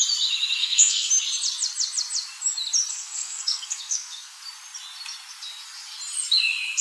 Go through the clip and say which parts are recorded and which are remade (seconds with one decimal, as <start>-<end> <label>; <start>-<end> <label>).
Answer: 0.0-0.6 recorded; 0.6-1.1 remade; 1.1-2.9 recorded; 2.9-4.4 remade; 4.4-6.8 recorded